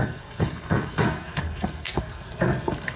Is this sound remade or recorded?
remade